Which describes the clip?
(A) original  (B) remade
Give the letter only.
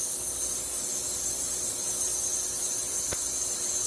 A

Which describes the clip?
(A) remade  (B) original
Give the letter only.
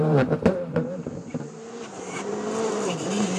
A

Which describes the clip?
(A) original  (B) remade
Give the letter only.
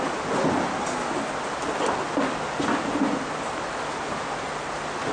A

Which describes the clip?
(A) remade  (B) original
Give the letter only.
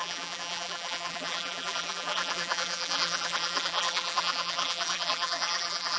A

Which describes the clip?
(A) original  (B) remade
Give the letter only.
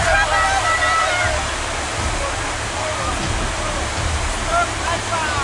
A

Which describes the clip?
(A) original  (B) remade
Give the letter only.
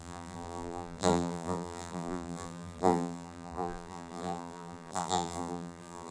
B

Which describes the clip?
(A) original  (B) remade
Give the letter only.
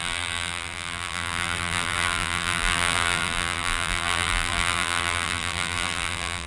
B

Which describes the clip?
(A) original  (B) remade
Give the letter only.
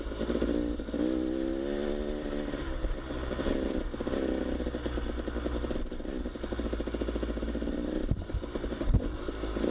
A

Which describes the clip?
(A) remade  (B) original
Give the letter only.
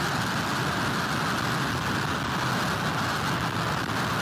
B